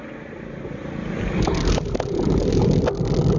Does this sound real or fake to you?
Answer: real